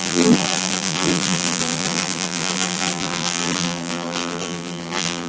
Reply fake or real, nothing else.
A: fake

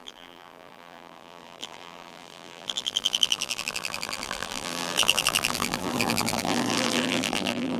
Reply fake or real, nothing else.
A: fake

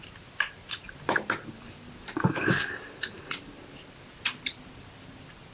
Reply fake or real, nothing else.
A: real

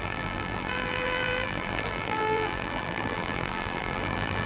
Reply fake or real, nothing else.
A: fake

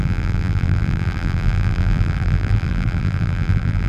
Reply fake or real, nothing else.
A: fake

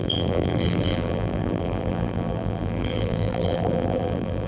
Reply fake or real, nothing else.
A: fake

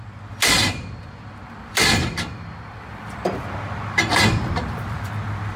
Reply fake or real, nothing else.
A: fake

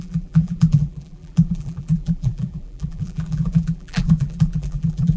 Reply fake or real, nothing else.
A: fake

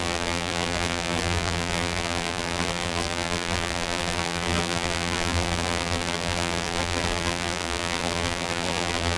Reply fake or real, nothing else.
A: fake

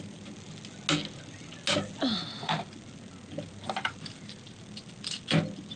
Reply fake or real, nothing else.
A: real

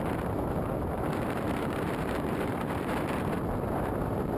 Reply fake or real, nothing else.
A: fake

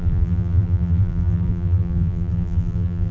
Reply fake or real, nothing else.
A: fake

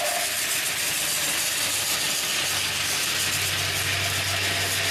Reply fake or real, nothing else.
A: real